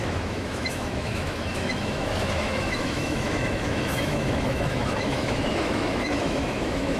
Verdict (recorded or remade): remade